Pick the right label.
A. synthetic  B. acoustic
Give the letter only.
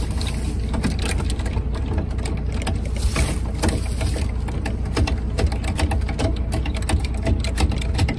B